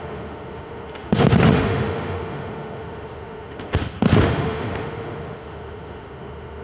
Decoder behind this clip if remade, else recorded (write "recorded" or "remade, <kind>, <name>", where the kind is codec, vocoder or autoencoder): remade, autoencoder, DAC-VAE